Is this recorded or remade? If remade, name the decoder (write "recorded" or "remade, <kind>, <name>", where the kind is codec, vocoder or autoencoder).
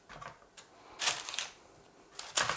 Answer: recorded